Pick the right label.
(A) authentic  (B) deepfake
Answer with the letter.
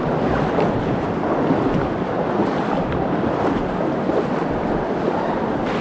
A